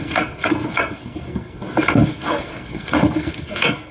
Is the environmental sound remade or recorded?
remade